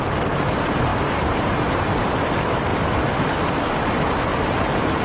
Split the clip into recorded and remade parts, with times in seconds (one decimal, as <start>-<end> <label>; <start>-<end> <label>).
0.0-0.9 recorded; 0.9-2.2 remade; 2.2-4.3 recorded; 4.3-5.0 remade